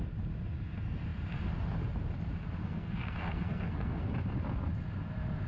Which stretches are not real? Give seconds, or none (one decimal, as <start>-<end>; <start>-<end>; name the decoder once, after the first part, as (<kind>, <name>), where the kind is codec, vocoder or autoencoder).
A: 2.6-4.1 (codec, SNAC)